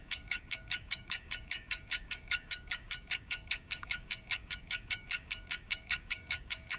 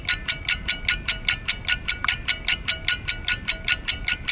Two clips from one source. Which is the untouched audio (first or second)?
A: second